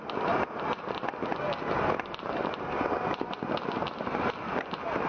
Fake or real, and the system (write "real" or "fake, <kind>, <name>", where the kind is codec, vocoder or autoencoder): real